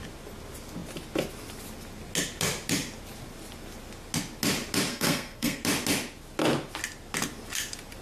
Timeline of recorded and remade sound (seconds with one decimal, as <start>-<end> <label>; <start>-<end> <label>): 0.0-4.9 recorded; 4.9-5.6 remade; 5.6-8.0 recorded